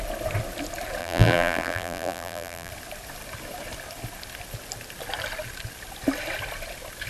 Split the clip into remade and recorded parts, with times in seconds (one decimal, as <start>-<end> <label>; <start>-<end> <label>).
0.0-1.0 recorded; 1.0-2.7 remade; 2.7-7.1 recorded